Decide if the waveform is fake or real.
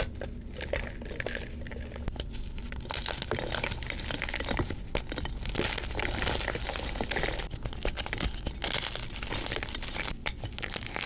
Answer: real